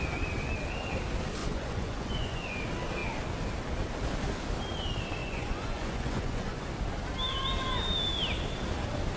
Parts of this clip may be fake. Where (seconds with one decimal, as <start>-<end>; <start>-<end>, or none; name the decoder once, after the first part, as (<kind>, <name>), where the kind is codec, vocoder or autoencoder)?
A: 1.4-2.6 (vocoder, Vocos); 5.2-6.7